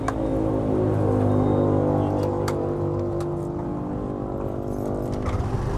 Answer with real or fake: real